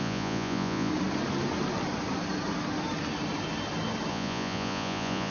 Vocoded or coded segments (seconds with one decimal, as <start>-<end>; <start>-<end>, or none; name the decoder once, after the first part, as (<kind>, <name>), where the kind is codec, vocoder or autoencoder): 0.0-0.9 (vocoder, Vocos); 4.1-5.3